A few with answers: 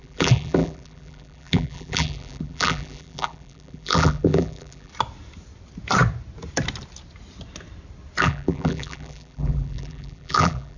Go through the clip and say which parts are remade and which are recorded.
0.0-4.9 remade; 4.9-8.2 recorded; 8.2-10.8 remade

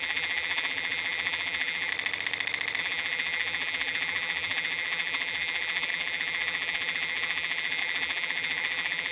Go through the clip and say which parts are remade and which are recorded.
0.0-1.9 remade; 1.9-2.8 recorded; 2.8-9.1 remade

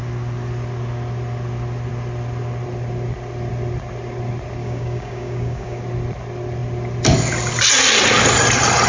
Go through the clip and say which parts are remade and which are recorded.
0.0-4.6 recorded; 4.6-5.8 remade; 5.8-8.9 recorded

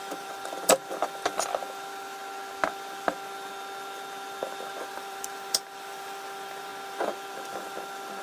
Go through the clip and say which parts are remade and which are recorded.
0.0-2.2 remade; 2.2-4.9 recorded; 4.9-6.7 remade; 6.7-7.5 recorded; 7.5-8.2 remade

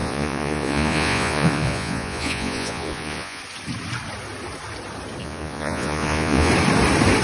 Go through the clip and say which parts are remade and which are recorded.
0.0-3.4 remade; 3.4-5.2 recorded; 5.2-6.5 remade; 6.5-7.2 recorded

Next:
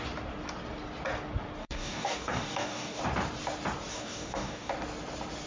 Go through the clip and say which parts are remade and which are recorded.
0.0-1.6 recorded; 1.6-3.0 remade; 3.0-3.9 recorded; 3.9-4.7 remade; 4.7-5.5 recorded